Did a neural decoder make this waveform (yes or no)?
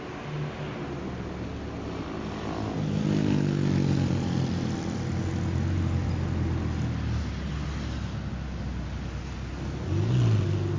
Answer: no